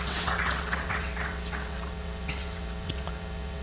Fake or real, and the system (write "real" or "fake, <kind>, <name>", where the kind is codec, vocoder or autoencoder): fake, vocoder, WaveNeXt